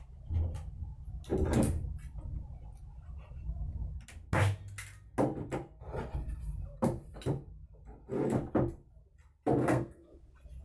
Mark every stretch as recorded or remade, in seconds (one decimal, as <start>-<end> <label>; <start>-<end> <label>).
0.0-9.6 recorded; 9.6-10.2 remade; 10.2-10.6 recorded